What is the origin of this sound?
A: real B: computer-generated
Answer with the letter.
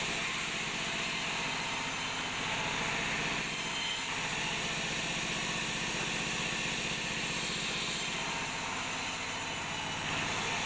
A